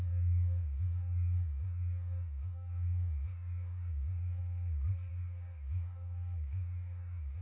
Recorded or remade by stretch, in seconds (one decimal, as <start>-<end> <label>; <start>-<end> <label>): 0.0-4.4 remade; 4.4-5.1 recorded; 5.1-7.4 remade